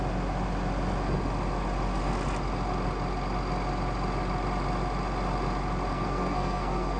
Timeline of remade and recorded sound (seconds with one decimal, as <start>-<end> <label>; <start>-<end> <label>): 0.0-5.9 recorded; 5.9-7.0 remade